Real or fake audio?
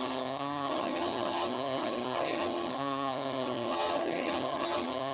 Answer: fake